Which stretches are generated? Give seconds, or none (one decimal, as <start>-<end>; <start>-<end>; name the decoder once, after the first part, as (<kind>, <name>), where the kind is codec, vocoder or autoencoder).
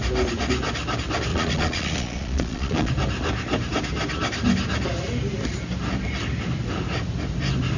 1.3-2.9 (vocoder, Vocos)